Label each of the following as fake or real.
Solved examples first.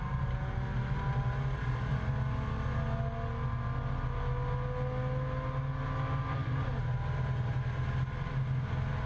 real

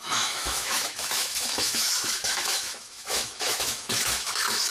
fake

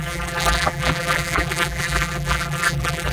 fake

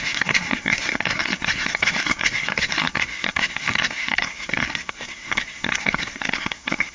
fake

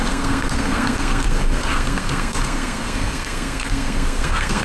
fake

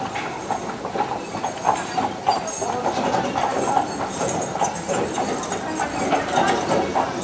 real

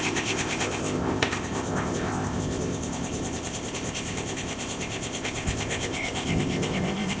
fake